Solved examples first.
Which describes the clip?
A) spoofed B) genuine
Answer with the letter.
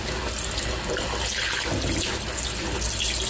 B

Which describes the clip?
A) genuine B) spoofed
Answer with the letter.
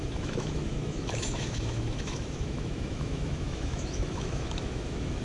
B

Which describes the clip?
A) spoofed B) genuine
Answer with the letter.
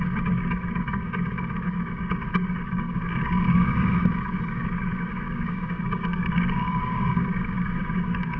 A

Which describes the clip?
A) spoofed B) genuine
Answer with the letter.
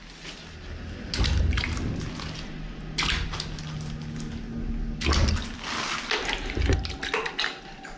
B